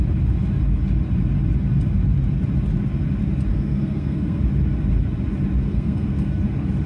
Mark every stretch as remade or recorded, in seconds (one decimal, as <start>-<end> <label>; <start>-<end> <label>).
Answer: 0.0-3.5 recorded; 3.5-4.4 remade; 4.4-5.6 recorded; 5.6-6.4 remade; 6.4-6.9 recorded